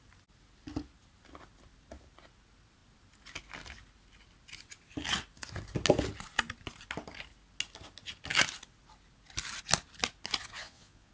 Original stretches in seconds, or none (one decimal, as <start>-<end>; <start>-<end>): 0.0-10.4